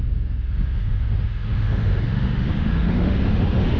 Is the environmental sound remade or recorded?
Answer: remade